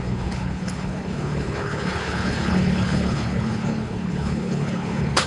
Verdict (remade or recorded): remade